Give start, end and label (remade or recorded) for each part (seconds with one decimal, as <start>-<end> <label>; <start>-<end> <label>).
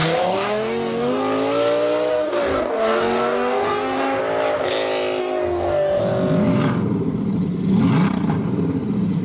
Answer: 0.0-1.2 remade; 1.2-2.1 recorded; 2.1-4.2 remade; 4.2-5.2 recorded; 5.2-6.0 remade; 6.0-9.2 recorded